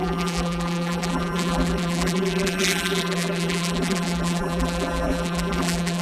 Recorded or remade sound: remade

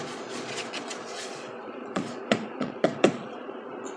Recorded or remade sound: remade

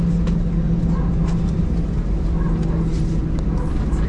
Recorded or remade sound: recorded